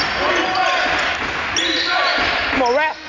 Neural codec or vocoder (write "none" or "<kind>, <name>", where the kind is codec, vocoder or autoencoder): none